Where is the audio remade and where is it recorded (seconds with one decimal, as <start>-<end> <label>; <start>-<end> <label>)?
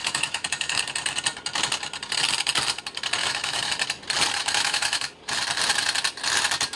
0.0-0.8 remade; 0.8-3.2 recorded; 3.2-3.7 remade; 3.7-4.4 recorded; 4.4-5.1 remade; 5.1-6.8 recorded